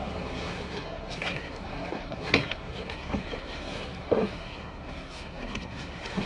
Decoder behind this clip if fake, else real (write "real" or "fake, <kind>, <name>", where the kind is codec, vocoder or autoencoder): fake, codec, SNAC